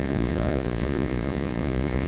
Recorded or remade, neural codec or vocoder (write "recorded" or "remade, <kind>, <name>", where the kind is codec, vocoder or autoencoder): remade, vocoder, Vocos